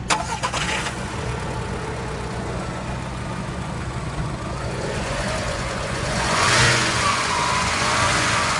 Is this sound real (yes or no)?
no